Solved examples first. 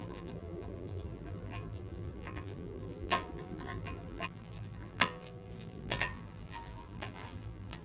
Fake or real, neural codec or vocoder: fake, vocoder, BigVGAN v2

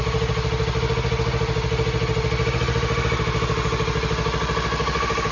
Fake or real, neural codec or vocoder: real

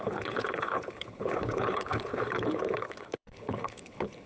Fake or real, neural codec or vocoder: fake, codec, HILCodec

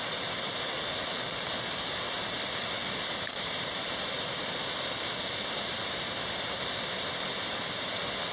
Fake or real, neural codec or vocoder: real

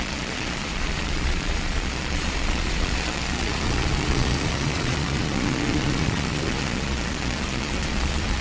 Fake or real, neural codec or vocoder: fake, vocoder, Vocos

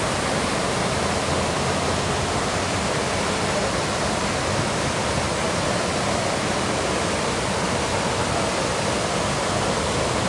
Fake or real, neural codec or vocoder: real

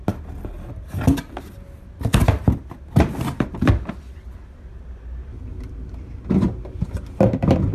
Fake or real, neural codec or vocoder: real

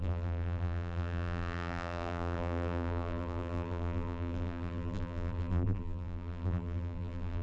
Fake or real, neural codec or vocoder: fake, vocoder, BigVGAN v2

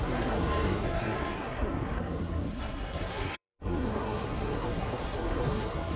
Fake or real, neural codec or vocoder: fake, codec, SNAC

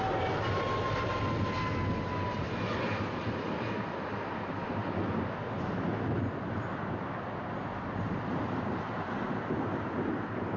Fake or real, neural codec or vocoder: real